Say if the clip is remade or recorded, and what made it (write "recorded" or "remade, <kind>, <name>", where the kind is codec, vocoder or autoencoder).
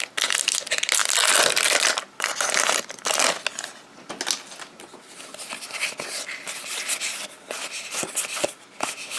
recorded